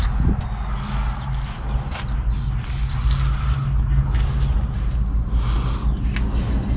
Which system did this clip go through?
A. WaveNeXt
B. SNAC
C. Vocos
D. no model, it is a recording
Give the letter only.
D